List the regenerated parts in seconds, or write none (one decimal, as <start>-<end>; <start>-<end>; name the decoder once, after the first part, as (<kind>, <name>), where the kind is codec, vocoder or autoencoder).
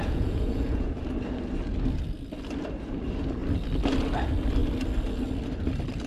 0.0-1.0 (vocoder, Vocos)